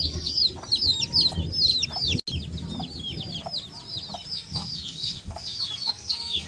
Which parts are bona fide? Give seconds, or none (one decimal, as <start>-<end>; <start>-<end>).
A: 0.4-4.3